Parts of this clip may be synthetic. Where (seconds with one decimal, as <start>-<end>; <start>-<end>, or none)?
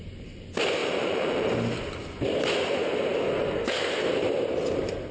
0.8-1.5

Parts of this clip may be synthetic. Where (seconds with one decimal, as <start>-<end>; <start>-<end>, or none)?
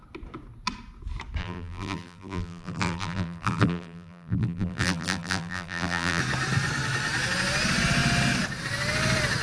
1.4-6.2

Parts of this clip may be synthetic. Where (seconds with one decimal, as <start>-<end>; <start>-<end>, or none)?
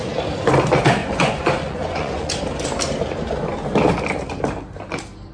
1.0-2.4